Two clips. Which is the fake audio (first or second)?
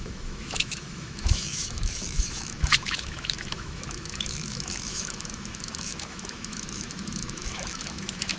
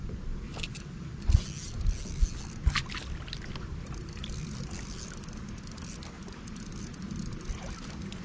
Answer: first